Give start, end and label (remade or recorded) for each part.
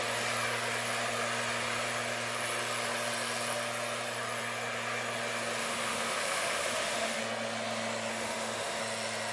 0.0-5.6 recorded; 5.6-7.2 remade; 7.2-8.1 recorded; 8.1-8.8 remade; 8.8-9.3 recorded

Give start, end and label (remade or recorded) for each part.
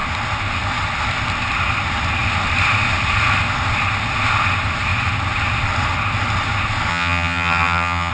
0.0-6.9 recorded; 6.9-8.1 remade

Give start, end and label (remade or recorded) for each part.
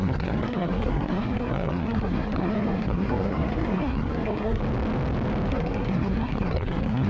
0.0-4.6 remade; 4.6-5.5 recorded; 5.5-7.1 remade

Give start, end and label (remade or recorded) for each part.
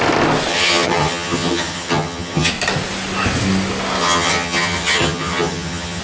0.0-0.5 recorded; 0.5-2.5 remade; 2.5-4.0 recorded; 4.0-6.0 remade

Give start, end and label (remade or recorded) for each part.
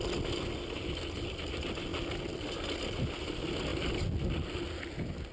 0.0-5.3 recorded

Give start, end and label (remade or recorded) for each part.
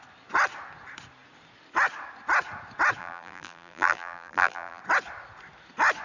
0.0-3.0 recorded; 3.0-4.8 remade; 4.8-6.0 recorded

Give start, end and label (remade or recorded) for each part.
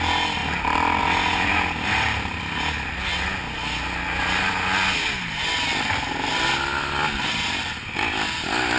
0.0-8.8 recorded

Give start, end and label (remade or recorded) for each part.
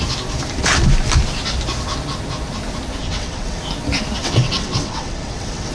0.0-3.0 recorded; 3.0-3.6 remade; 3.6-4.2 recorded; 4.2-5.7 remade